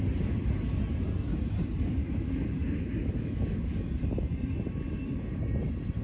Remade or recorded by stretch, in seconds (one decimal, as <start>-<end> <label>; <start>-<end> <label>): 0.0-2.0 recorded; 2.0-3.9 remade; 3.9-6.0 recorded